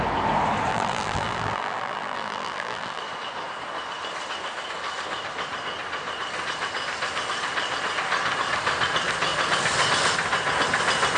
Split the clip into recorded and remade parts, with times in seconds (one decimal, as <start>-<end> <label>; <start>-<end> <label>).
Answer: 0.0-0.7 recorded; 0.7-3.0 remade; 3.0-11.2 recorded